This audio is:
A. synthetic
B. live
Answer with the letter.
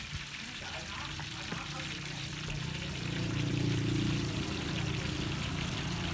A